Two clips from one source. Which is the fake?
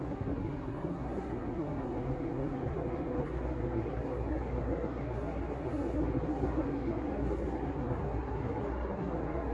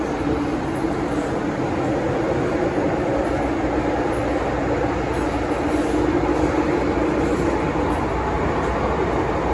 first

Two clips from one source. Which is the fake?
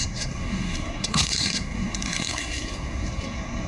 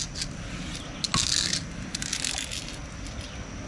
first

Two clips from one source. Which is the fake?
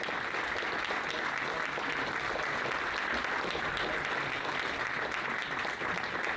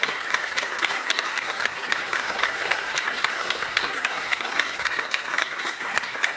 second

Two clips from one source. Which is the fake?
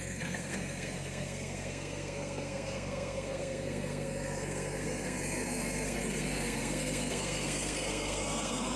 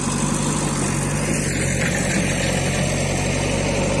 first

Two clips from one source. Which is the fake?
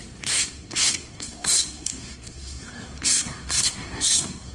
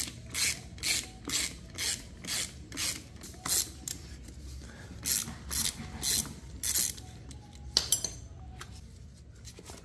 first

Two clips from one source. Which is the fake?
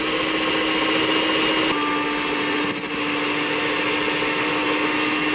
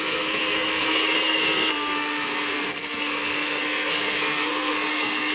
second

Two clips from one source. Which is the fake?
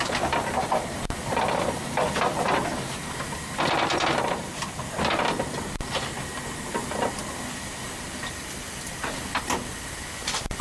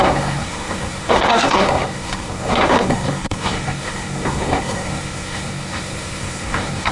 second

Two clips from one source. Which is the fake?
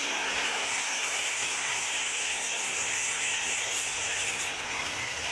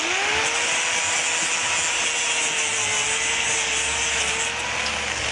first